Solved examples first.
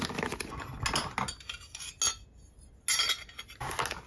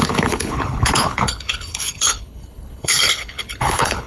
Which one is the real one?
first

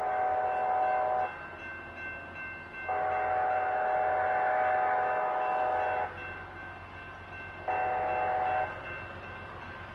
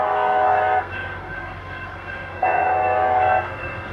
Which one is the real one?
first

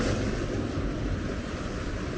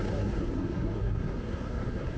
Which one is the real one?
first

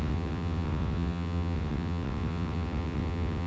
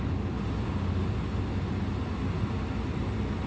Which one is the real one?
second